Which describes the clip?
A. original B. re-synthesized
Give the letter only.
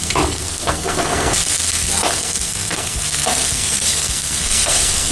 B